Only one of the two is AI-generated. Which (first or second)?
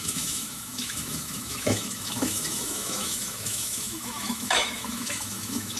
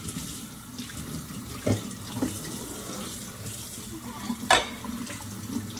first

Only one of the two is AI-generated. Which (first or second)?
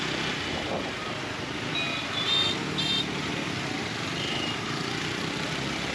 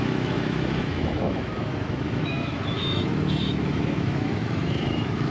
second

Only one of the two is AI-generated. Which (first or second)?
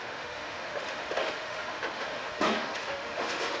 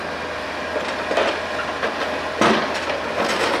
first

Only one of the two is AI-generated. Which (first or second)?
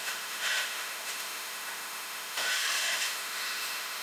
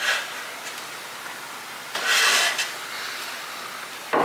first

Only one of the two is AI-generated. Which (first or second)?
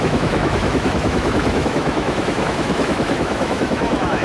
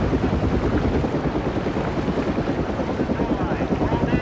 first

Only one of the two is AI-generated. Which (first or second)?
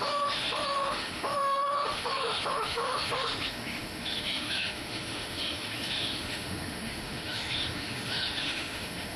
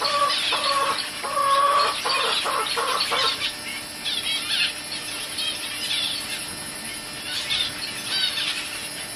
first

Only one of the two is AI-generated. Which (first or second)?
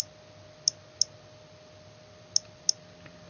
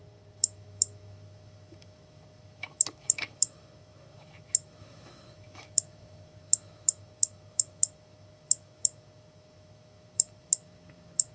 second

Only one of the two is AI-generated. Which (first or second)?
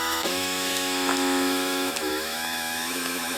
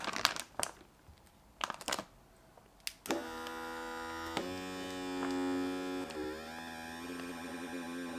first